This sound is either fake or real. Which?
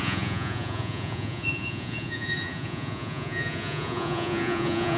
fake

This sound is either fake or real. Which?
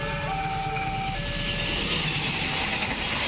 real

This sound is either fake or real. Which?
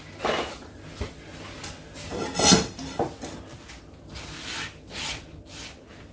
real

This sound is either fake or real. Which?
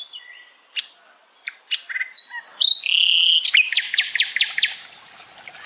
real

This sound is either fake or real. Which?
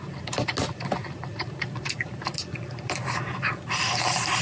real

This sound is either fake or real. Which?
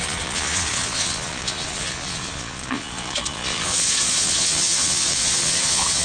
fake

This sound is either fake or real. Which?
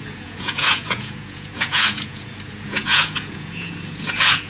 fake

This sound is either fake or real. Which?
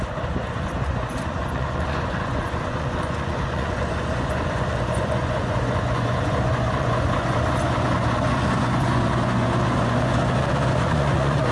fake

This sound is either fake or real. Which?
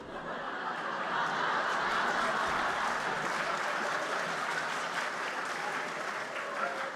real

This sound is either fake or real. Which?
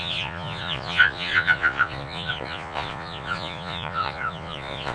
fake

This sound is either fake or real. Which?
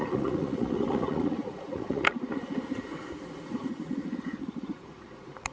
fake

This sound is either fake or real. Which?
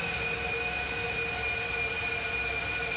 real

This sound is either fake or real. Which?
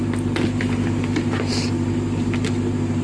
real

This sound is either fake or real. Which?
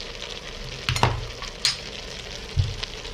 real